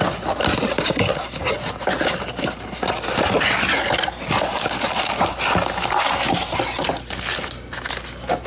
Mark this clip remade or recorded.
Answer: recorded